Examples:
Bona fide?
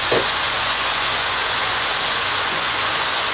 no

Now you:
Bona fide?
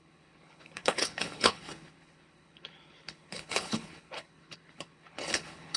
no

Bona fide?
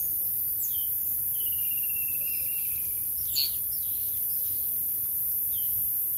yes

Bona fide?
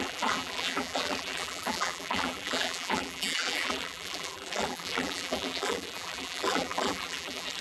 no